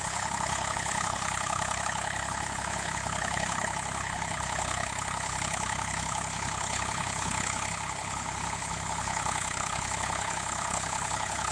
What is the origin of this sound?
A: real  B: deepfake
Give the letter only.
B